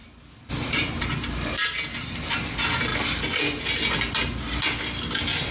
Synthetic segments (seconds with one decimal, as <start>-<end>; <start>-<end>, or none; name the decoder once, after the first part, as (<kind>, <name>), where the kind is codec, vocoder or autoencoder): 0.0-2.5 (vocoder, BigVGAN v2)